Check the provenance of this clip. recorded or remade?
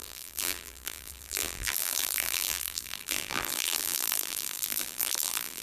remade